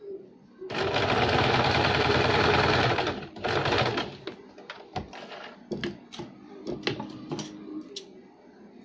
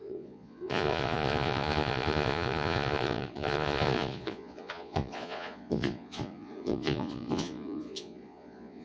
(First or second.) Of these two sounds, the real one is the first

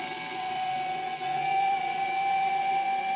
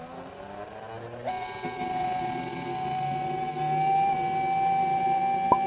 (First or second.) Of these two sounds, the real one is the second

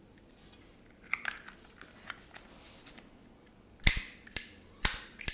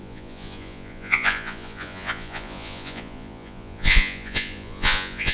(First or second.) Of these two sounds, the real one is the first